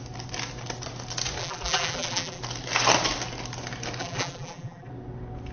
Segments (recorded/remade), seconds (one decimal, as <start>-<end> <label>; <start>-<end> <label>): 0.0-1.4 recorded; 1.4-2.4 remade; 2.4-4.0 recorded; 4.0-4.9 remade; 4.9-5.5 recorded